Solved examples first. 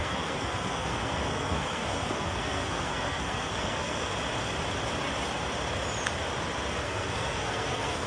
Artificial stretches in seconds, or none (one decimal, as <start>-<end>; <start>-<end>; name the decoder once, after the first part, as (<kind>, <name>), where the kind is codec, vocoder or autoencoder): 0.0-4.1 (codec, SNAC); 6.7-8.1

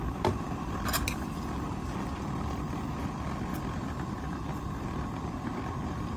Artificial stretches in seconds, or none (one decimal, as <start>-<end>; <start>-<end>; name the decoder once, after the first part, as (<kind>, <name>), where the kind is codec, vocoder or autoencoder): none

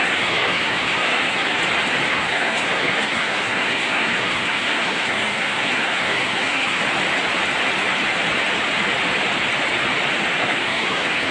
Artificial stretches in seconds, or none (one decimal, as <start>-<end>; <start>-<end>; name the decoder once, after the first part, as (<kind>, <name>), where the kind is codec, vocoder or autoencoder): 0.0-1.6 (codec, SNAC); 2.1-6.8; 10.4-11.3

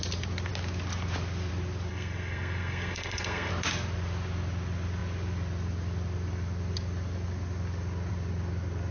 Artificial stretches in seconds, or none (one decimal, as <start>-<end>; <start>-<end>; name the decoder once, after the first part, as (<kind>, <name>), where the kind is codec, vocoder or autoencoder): 1.9-3.5 (codec, SNAC)